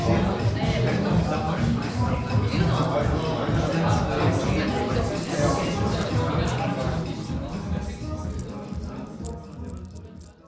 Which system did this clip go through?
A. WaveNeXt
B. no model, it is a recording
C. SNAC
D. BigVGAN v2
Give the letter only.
B